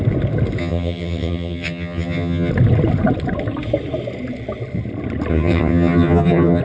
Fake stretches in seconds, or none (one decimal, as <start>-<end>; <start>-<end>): 0.6-2.5; 5.3-6.6